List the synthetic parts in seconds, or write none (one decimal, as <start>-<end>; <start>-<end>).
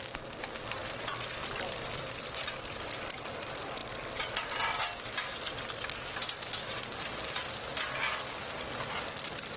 none